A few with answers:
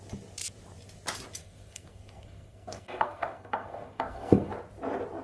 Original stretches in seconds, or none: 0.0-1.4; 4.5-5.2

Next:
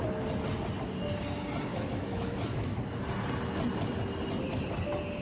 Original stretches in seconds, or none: 0.0-1.7; 2.8-5.2

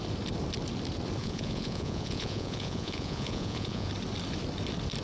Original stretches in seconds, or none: 0.0-1.2; 3.9-5.0

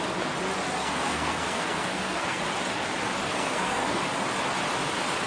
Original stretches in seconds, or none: 0.0-0.8; 2.4-3.2; 4.0-5.3

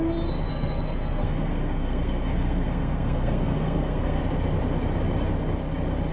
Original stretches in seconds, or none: 0.0-0.5; 4.2-6.1

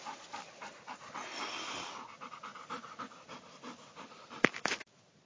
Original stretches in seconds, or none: 0.0-5.3

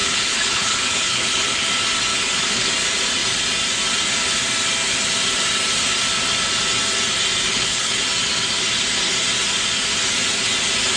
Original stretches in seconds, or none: 1.6-2.1; 2.7-7.5; 8.0-11.0

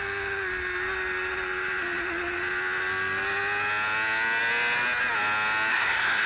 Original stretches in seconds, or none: 0.0-5.7